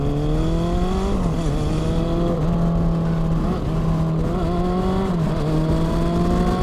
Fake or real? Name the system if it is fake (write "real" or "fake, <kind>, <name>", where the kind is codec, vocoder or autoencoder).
real